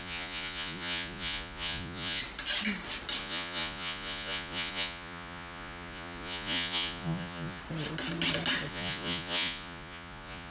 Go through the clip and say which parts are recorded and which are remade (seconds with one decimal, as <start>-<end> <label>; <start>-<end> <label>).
0.0-2.2 remade; 2.2-3.2 recorded; 3.2-7.6 remade; 7.6-8.7 recorded; 8.7-10.5 remade